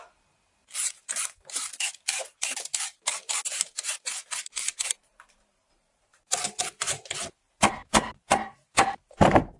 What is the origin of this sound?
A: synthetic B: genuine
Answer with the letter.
A